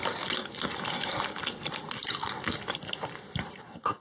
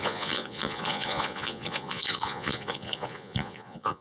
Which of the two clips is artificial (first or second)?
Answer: second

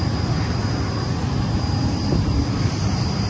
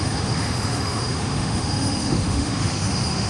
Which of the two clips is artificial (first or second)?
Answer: second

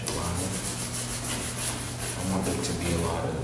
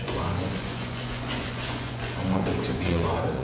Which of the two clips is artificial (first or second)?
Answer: second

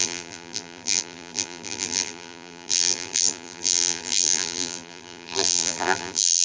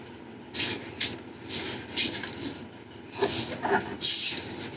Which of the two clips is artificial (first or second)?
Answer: first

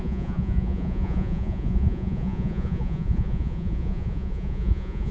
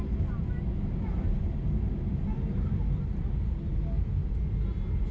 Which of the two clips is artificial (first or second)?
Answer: first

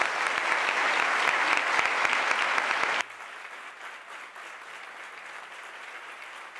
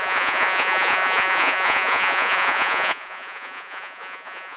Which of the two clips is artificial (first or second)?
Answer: second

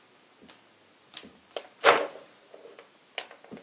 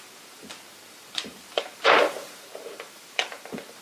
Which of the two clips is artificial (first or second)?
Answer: second